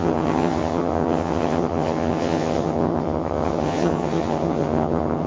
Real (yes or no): no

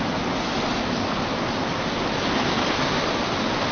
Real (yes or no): yes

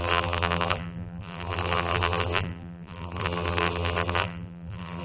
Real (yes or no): no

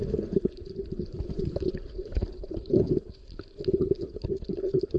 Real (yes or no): no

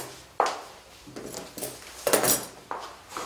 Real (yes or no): yes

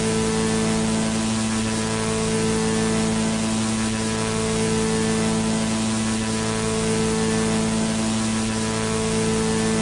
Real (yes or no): yes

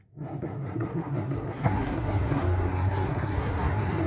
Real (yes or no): no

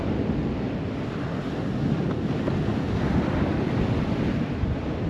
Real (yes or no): yes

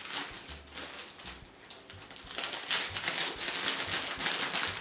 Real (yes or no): yes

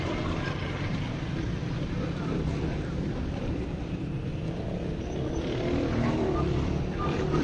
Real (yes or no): no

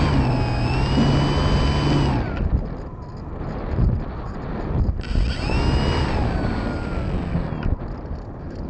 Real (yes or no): yes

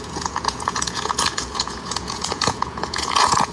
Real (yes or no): no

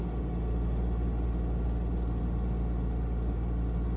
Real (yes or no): yes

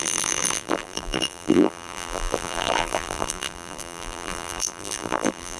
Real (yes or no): no